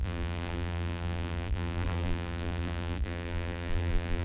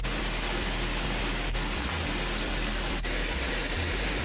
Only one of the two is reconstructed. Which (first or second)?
first